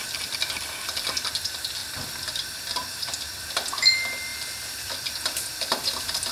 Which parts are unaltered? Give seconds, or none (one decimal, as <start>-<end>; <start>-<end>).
0.0-4.3